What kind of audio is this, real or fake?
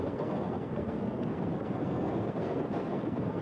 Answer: fake